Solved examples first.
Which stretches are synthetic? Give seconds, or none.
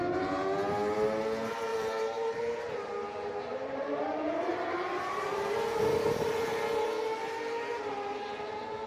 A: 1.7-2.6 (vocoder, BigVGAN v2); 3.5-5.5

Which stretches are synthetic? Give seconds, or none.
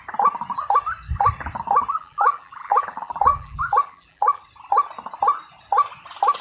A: 1.9-4.4 (vocoder, BigVGAN v2)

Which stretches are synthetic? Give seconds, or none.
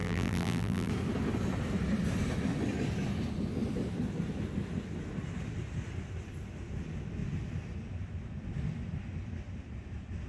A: 0.0-0.9 (vocoder, BigVGAN v2)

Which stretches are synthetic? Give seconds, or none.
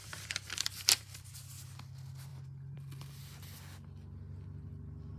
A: 0.0-1.3 (vocoder, BigVGAN v2); 2.3-3.2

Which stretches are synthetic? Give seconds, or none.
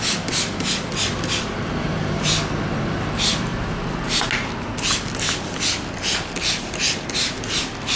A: none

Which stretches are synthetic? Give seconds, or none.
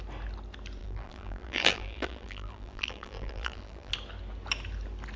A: 0.8-3.9 (vocoder, BigVGAN v2)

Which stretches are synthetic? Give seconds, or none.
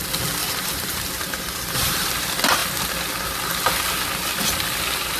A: 0.4-2.1 (vocoder, BigVGAN v2)